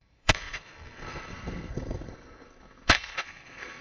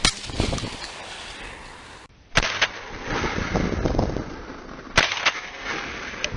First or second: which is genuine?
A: second